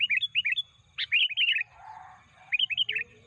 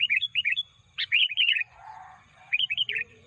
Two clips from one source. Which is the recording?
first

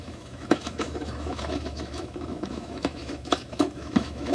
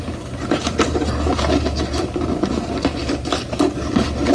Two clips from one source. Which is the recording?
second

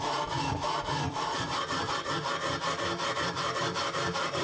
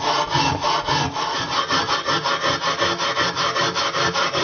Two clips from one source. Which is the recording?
second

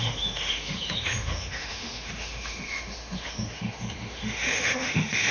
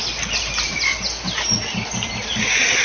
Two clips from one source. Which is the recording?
second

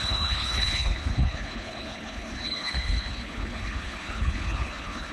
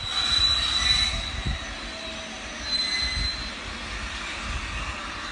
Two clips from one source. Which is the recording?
second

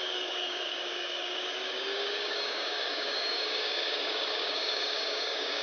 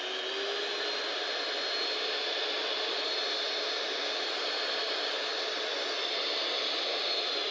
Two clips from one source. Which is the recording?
second